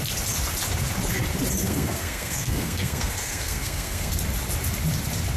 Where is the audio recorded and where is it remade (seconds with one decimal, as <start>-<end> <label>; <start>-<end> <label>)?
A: 0.0-1.6 recorded; 1.6-4.1 remade; 4.1-5.4 recorded